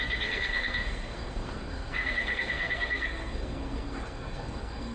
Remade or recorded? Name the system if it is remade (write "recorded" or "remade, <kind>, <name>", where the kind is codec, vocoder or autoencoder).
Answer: remade, codec, SNAC